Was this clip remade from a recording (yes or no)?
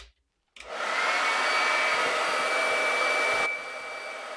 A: no